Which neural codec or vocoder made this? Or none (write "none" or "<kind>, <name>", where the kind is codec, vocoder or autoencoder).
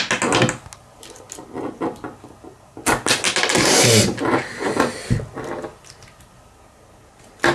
none